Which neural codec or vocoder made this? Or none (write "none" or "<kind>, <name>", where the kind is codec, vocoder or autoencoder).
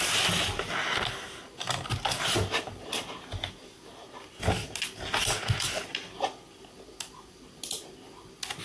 none